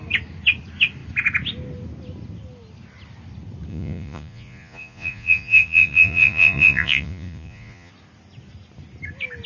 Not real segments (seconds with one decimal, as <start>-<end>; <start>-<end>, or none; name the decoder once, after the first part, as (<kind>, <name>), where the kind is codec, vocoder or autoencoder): 3.7-7.9 (vocoder, Vocos)